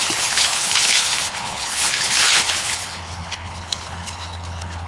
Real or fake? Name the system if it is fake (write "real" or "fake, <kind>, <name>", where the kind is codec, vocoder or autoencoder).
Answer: fake, codec, HILCodec